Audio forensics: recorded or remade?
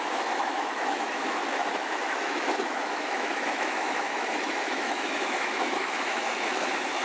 remade